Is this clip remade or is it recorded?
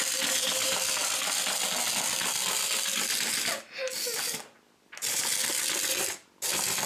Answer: recorded